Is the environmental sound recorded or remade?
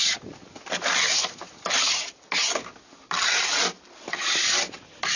recorded